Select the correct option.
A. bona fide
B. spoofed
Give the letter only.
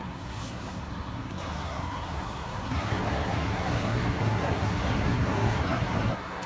B